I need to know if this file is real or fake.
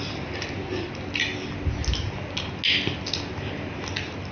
real